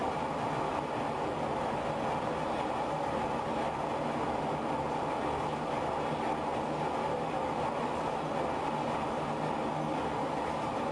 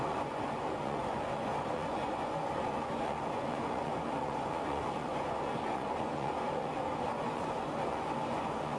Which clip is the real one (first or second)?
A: first